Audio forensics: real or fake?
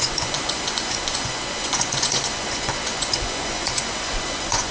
fake